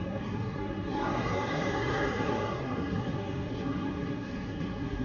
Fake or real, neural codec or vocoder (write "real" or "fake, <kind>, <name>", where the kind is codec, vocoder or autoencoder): fake, codec, SNAC